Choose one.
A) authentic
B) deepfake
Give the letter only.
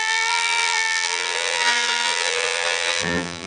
B